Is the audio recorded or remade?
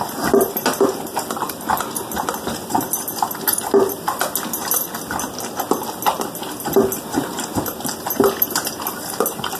recorded